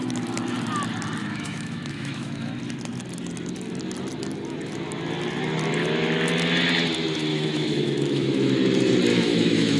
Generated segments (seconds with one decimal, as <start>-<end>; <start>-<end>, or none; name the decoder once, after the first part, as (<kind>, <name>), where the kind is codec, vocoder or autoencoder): 1.2-2.5 (autoencoder, DAC-VAE); 7.3-8.5; 9.1-9.8